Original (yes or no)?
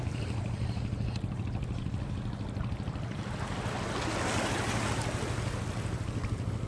yes